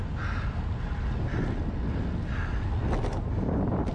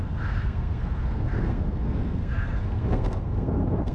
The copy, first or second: second